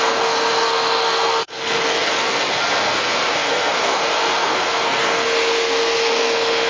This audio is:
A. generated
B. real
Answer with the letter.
A